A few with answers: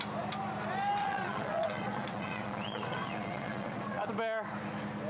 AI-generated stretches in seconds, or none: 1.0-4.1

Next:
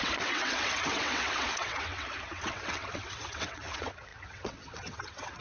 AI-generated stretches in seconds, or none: 0.0-5.4

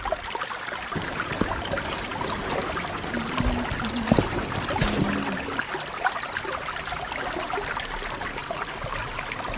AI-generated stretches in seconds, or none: none

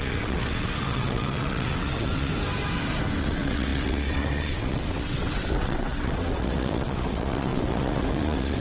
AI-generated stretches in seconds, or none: 0.0-2.3; 3.2-8.6

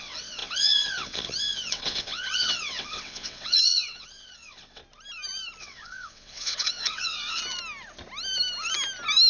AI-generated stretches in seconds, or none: 0.0-4.8; 5.6-7.4